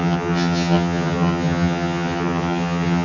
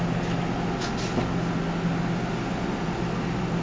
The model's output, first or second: first